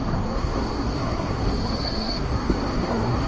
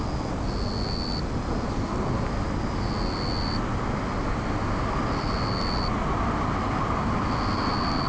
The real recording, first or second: second